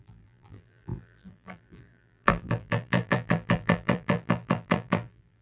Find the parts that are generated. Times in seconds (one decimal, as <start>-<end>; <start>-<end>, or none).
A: 0.0-5.4